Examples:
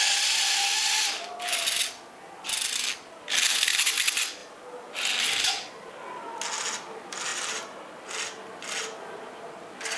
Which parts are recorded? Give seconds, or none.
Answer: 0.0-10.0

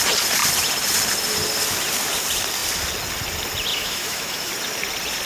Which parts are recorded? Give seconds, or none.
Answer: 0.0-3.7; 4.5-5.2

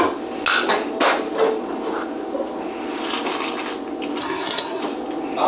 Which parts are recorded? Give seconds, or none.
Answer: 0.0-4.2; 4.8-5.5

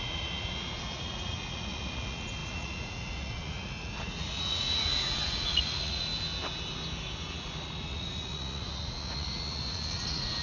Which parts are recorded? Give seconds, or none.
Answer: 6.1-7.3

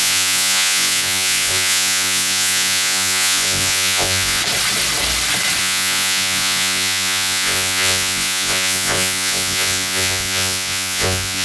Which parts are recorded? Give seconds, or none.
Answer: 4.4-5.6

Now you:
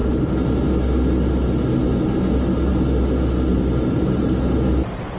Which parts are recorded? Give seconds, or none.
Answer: 0.0-3.5; 4.1-5.2

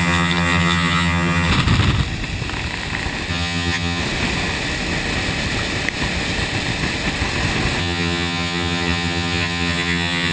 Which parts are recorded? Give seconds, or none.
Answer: 1.5-3.3; 4.0-7.8